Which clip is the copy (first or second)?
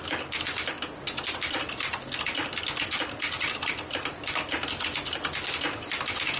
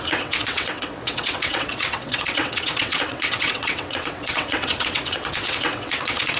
second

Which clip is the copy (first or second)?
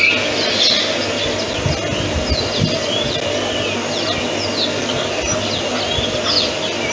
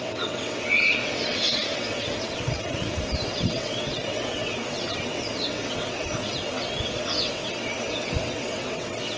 second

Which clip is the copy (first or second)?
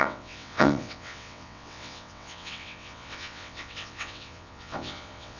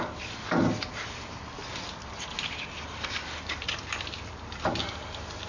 first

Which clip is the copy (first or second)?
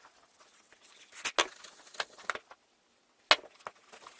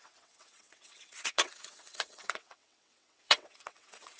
second